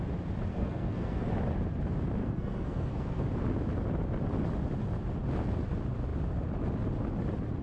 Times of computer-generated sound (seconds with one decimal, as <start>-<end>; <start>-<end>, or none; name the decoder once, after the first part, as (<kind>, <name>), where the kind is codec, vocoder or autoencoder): 0.5-1.3 (codec, SNAC); 2.2-3.2

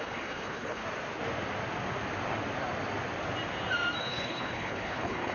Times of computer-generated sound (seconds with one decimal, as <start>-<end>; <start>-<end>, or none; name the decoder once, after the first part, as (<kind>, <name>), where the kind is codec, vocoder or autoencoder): 0.0-0.8 (codec, HILCodec); 4.0-5.3